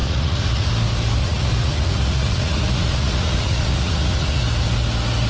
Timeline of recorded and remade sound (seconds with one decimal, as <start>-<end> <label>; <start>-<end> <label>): 0.0-0.7 remade; 0.7-1.2 recorded; 1.2-4.4 remade; 4.4-5.3 recorded